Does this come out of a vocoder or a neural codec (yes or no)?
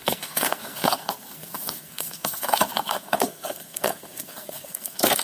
yes